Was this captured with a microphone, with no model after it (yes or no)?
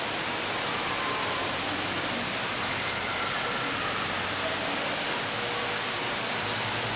yes